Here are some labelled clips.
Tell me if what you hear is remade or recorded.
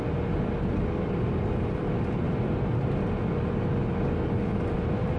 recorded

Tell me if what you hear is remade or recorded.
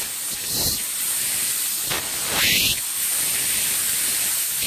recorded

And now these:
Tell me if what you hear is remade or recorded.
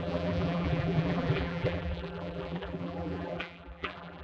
remade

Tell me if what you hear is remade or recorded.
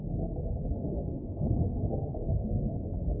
remade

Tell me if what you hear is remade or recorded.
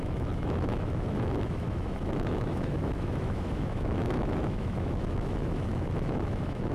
remade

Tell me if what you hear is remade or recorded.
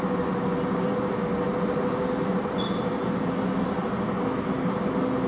recorded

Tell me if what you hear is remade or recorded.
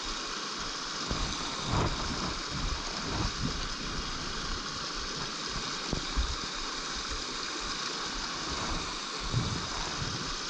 remade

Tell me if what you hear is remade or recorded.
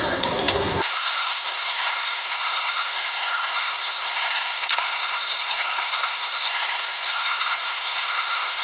remade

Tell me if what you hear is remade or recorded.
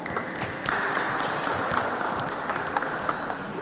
recorded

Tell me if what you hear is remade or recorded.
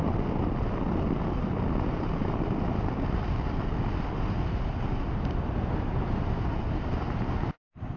recorded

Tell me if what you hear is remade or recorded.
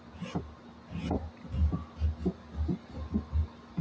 recorded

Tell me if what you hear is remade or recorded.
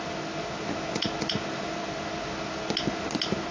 recorded